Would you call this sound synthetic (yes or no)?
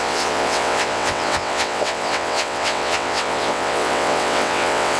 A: yes